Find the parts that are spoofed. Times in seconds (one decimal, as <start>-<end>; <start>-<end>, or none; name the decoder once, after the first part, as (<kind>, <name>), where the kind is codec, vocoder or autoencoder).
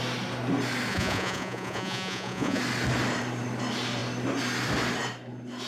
0.9-2.6 (vocoder, Vocos)